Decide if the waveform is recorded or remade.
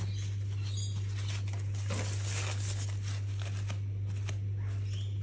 recorded